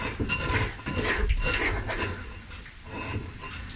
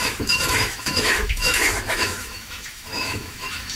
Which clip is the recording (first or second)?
first